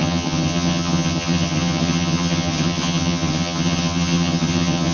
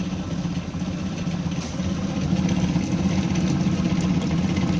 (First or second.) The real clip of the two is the second